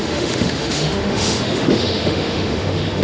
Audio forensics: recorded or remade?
remade